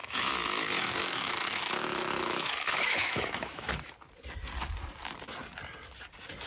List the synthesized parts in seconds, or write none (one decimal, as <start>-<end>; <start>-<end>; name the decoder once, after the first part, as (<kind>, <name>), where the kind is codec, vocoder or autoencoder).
0.0-3.7 (autoencoder, DAC-VAE)